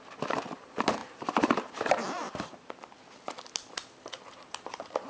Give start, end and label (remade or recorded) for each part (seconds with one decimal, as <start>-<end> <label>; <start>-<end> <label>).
0.0-2.5 remade; 2.5-3.7 recorded; 3.7-5.1 remade